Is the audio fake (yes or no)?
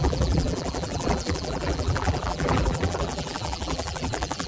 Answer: yes